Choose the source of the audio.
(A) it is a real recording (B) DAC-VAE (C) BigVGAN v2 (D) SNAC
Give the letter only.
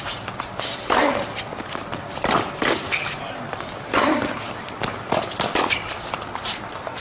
C